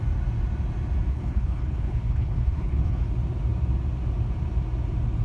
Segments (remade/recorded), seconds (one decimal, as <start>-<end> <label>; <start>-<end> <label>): 0.0-1.1 recorded; 1.1-3.1 remade; 3.1-5.2 recorded